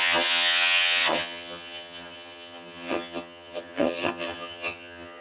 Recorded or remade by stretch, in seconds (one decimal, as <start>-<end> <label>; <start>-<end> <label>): 0.0-5.2 remade

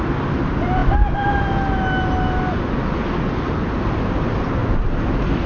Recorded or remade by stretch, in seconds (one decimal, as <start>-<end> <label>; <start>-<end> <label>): 0.0-0.8 remade; 0.8-3.9 recorded; 3.9-4.6 remade; 4.6-5.5 recorded

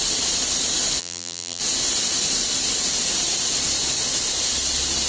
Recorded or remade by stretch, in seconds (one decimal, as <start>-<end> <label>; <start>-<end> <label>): 0.0-1.0 recorded; 1.0-1.6 remade; 1.6-5.1 recorded

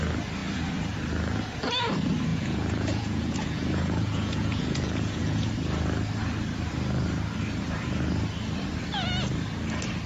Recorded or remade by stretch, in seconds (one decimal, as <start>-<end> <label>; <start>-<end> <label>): 0.0-2.3 recorded; 2.3-5.5 remade; 5.5-10.1 recorded

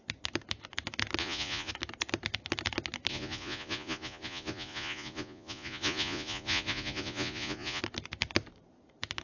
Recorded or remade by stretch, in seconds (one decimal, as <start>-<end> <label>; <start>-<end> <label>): 0.0-1.2 recorded; 1.2-1.7 remade; 1.7-3.1 recorded; 3.1-7.8 remade; 7.8-9.2 recorded

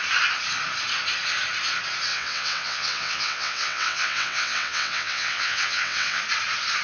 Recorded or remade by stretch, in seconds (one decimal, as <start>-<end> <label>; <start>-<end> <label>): 0.0-2.1 recorded; 2.1-6.2 remade; 6.2-6.8 recorded

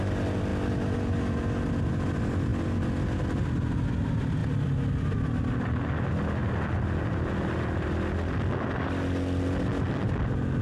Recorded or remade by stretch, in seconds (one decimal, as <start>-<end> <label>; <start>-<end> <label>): 0.0-10.6 recorded

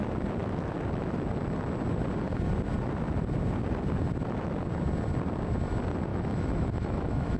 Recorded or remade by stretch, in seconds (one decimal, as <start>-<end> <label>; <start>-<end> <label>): 0.0-6.1 recorded; 6.1-7.4 remade